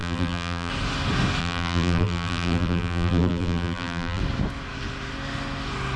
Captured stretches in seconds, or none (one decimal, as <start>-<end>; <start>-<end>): 0.7-1.4; 4.2-6.0